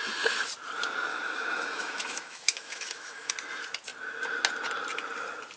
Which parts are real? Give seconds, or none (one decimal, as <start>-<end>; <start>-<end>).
0.0-1.1; 3.3-5.6